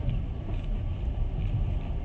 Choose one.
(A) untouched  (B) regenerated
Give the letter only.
A